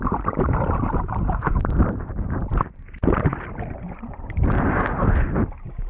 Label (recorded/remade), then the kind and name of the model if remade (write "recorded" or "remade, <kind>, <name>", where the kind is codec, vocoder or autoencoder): remade, vocoder, BigVGAN v2